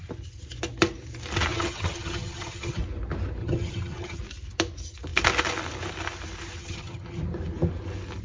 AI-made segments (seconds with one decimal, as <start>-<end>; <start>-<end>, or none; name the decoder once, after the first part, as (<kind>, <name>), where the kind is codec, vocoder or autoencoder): 1.5-2.8 (vocoder, HiFi-GAN); 3.4-4.2; 6.6-7.2